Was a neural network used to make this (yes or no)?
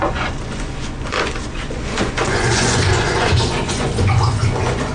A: yes